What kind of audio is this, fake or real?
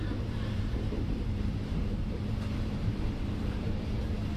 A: fake